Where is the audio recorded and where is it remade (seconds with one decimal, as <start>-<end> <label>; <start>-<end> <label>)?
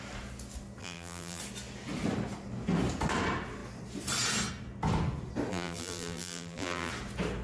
0.0-0.8 recorded; 0.8-1.4 remade; 1.4-5.5 recorded; 5.5-6.9 remade; 6.9-7.4 recorded